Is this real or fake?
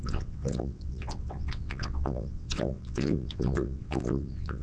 fake